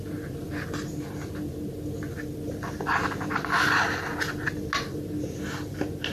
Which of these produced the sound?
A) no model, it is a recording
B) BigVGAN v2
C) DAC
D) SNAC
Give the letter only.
A